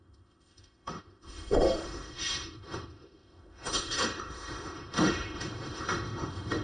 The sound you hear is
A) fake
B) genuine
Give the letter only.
A